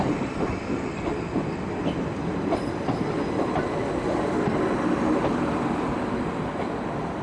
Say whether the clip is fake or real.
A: real